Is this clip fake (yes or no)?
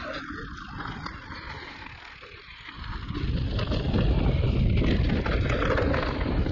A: no